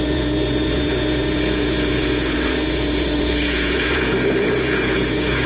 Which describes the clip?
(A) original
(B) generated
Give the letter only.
B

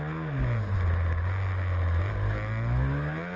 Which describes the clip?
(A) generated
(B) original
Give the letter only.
B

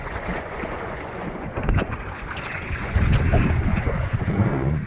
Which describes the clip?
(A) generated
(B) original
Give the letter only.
A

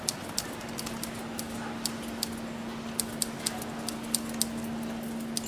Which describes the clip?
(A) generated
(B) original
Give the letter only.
B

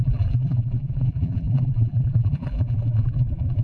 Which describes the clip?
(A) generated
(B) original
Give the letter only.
A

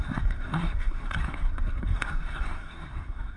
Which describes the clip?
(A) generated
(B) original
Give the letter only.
A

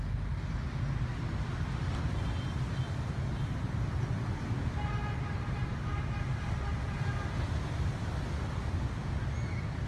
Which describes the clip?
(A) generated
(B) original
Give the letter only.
B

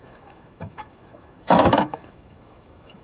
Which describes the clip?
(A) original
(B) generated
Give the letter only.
B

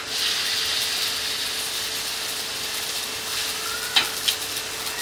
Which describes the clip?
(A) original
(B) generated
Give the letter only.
A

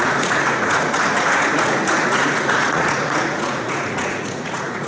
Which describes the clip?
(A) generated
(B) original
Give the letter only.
A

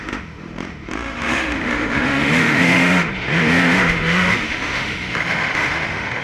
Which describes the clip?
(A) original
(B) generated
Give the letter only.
B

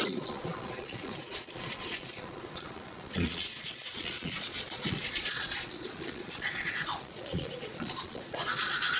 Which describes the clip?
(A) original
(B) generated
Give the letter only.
B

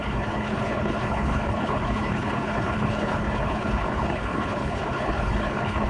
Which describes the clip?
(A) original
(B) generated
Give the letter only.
B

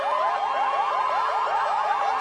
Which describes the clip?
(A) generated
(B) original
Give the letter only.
B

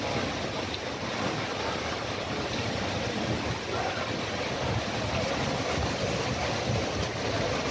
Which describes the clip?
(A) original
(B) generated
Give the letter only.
A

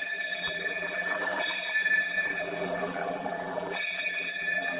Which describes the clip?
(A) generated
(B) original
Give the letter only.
A